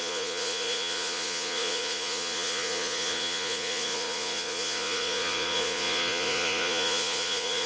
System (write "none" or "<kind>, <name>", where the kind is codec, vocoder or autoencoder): vocoder, Vocos